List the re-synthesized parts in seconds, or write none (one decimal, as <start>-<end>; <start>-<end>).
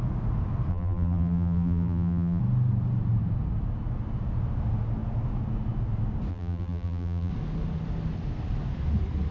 0.7-2.4; 6.3-7.3